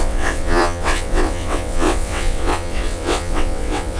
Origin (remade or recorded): remade